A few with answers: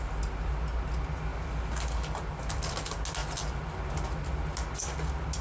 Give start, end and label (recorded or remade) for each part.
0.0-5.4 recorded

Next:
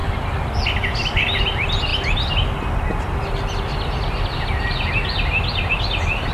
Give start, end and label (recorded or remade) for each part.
0.0-6.3 recorded

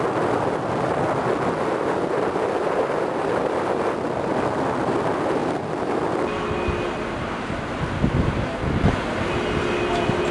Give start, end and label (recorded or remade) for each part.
0.0-10.3 recorded

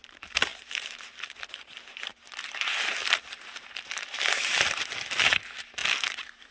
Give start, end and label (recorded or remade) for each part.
0.0-6.5 recorded